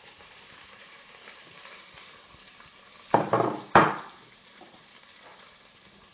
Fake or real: fake